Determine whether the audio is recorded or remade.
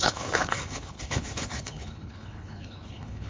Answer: remade